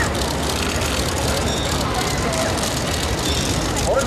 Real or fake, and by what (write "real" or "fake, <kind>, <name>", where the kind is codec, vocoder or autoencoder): real